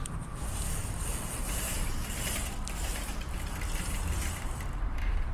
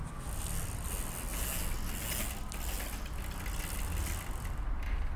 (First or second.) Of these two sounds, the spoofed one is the first